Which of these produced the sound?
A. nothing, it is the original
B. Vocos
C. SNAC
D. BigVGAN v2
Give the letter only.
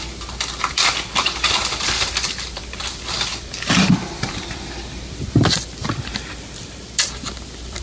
D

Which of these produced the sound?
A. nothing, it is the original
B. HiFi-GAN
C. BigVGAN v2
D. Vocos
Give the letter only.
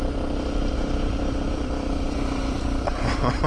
C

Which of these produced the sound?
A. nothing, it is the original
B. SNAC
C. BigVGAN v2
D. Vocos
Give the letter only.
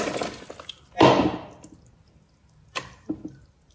A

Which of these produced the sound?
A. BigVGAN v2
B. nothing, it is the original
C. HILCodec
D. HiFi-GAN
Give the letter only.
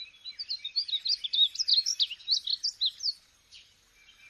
B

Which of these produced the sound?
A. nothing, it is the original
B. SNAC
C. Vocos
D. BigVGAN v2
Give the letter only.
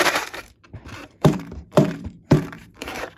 D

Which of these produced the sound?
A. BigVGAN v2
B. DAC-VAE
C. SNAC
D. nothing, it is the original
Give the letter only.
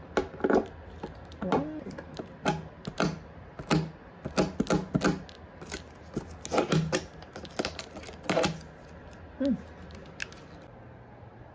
D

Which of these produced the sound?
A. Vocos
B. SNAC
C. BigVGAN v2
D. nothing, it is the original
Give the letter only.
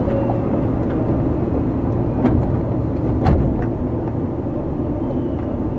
D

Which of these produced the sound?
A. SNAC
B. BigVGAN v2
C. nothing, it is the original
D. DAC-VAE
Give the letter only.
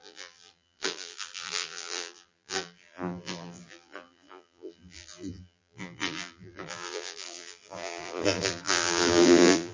B